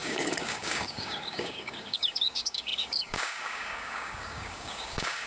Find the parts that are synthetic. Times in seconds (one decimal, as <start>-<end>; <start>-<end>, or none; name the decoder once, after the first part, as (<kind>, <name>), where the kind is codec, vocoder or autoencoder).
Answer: 0.0-5.3 (codec, DAC)